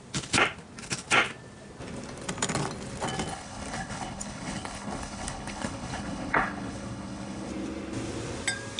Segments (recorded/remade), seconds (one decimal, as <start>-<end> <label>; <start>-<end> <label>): 0.0-3.3 recorded; 3.3-7.5 remade; 7.5-8.8 recorded